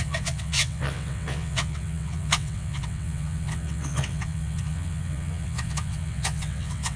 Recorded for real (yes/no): no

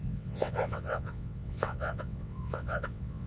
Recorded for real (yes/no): no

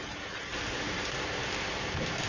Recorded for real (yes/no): yes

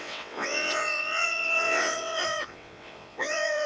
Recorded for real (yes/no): no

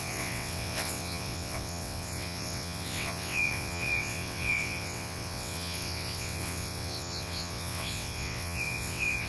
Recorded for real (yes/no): no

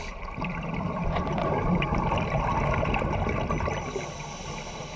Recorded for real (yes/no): yes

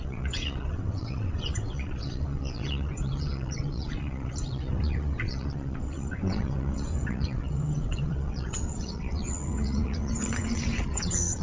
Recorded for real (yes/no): no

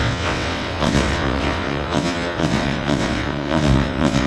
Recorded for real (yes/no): no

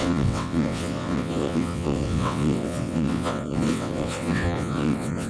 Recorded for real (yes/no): no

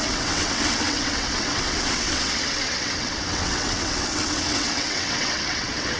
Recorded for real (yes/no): no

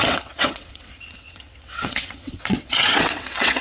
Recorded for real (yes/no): no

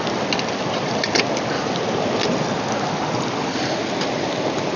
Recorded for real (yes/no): yes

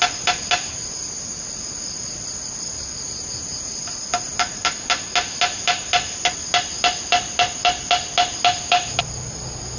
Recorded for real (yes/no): yes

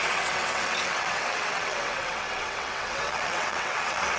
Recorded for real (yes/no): no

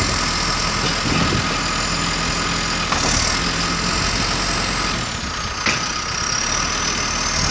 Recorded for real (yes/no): yes